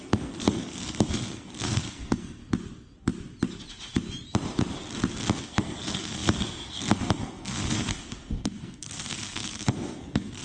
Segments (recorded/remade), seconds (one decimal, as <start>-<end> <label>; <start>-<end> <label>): 0.0-2.4 remade; 2.4-5.4 recorded; 5.4-10.4 remade